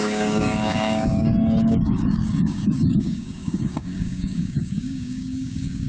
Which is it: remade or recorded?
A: remade